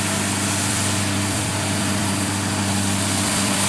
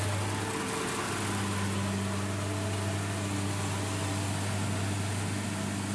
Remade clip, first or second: first